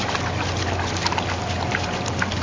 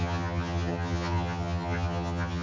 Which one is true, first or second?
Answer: first